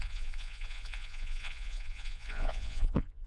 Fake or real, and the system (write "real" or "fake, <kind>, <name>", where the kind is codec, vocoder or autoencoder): fake, vocoder, Vocos